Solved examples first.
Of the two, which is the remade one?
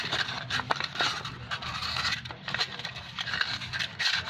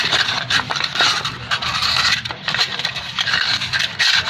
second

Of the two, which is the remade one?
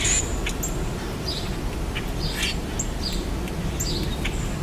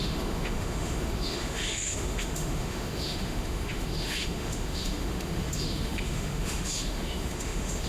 second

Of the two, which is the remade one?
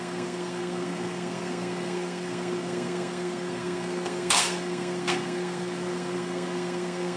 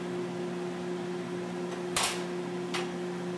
first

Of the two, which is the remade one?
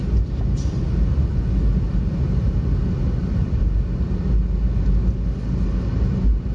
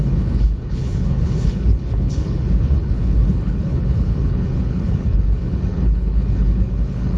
second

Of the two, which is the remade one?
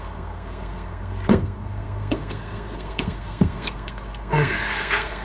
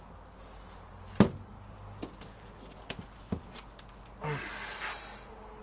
first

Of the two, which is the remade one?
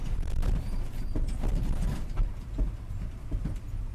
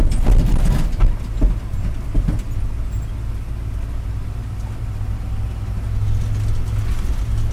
first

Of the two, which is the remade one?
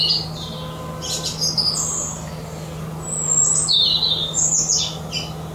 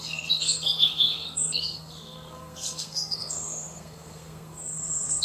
second